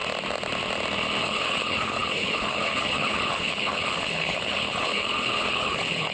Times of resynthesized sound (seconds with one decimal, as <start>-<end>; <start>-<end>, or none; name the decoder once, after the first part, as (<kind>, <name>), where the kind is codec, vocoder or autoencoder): 1.2-6.1 (codec, HILCodec)

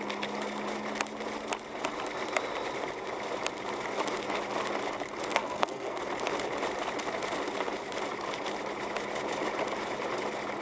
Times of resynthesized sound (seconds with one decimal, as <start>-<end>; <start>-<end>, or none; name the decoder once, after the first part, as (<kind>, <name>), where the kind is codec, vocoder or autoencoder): 5.3-6.0 (codec, SNAC)